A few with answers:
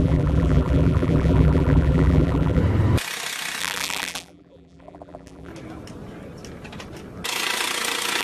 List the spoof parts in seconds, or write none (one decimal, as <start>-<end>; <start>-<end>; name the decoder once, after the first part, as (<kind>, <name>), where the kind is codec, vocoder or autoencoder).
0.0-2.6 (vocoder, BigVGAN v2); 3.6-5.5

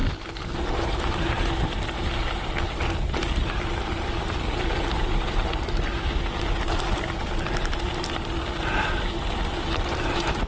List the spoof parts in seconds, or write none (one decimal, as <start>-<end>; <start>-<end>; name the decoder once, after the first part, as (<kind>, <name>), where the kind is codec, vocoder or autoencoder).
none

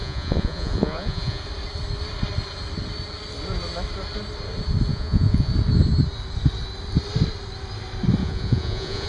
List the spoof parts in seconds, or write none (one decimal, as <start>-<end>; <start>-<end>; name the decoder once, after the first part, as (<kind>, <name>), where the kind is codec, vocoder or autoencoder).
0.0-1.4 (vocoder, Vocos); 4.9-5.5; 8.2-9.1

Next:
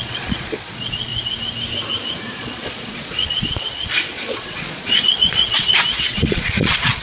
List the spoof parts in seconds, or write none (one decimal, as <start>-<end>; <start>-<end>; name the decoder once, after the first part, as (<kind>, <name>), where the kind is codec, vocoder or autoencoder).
0.0-1.1 (vocoder, Vocos); 2.2-7.0

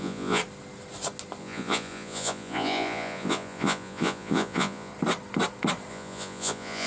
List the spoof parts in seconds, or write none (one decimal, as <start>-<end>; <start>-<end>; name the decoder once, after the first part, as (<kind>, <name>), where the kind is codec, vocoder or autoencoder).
0.0-0.4 (vocoder, Vocos); 1.4-4.9; 5.9-6.9

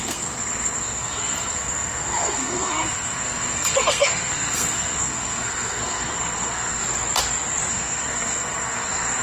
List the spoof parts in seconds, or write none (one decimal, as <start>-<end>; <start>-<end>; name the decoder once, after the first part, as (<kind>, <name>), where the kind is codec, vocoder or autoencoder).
0.0-6.8 (codec, SNAC); 7.7-9.2

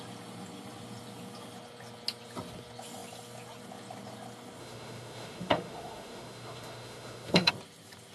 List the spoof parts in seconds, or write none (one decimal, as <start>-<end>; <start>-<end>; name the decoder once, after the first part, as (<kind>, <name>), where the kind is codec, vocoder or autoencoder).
4.6-7.5 (autoencoder, DAC-VAE)